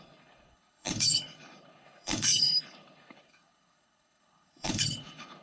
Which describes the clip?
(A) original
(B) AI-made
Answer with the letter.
B